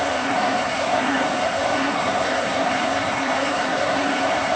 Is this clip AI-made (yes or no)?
yes